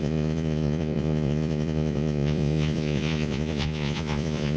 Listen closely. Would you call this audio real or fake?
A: fake